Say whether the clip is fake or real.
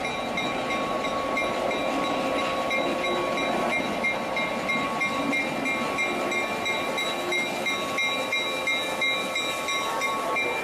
real